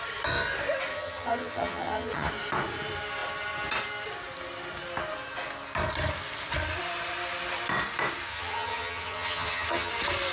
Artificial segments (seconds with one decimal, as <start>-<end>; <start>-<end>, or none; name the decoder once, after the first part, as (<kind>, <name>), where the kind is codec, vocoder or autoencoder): 0.9-2.3 (vocoder, HiFi-GAN); 8.3-9.9